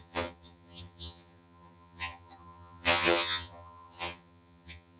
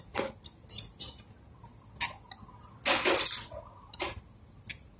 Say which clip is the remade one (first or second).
first